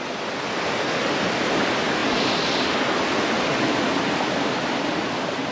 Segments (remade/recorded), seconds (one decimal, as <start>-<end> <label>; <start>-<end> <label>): 0.0-5.5 recorded